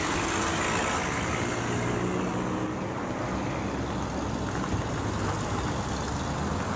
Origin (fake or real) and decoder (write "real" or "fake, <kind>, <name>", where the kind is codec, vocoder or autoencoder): real